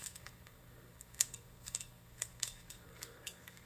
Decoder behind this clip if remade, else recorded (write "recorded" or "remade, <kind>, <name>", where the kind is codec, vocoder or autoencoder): remade, codec, SNAC